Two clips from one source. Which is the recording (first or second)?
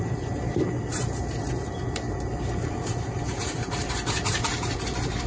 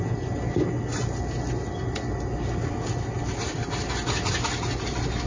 second